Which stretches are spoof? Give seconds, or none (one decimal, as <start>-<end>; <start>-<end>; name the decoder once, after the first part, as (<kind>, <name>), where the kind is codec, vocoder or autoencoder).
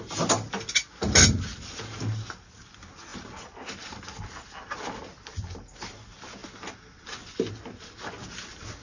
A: none